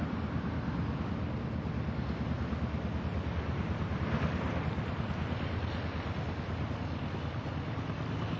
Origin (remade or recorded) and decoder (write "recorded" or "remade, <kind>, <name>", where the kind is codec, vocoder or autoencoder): recorded